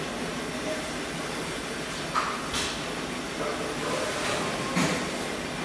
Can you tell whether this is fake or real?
real